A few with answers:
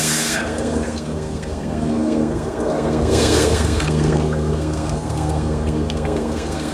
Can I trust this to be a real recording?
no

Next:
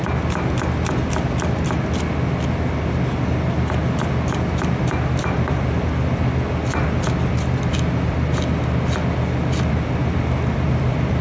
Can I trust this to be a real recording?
yes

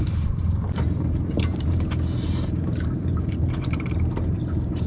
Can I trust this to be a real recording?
no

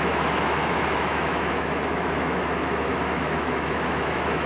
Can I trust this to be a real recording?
no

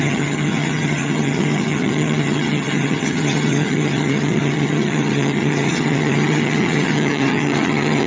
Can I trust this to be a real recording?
no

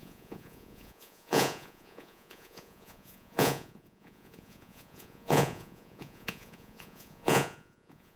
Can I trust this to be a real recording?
no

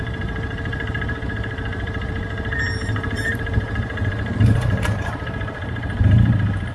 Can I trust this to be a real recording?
no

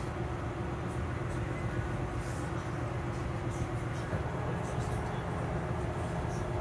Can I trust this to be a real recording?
yes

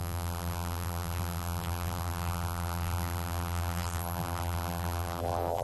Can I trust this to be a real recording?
no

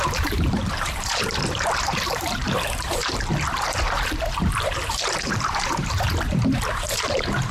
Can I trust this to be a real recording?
no